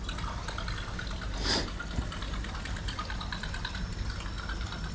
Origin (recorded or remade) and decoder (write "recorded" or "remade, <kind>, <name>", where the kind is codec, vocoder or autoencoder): recorded